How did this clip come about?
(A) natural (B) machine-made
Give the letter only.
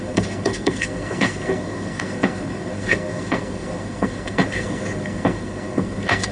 B